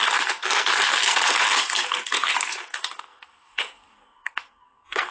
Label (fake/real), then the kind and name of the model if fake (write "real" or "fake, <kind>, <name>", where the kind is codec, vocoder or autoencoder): fake, codec, SNAC